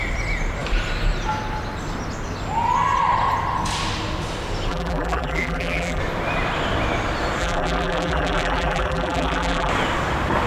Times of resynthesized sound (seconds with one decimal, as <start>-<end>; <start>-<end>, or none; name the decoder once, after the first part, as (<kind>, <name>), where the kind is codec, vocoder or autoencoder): 4.7-6.0 (vocoder, BigVGAN v2); 7.4-9.7